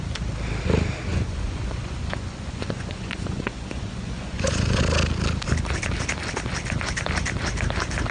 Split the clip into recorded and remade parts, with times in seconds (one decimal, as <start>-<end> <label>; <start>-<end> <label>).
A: 0.0-1.1 recorded; 1.1-4.8 remade; 4.8-8.1 recorded